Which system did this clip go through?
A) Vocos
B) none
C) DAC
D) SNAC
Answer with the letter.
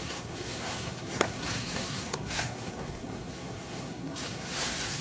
D